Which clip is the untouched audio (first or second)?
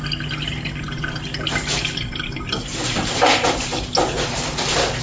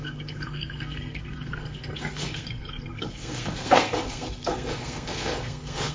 first